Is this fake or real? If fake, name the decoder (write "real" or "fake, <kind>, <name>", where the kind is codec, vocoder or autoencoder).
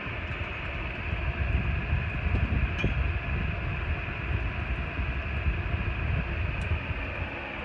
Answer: real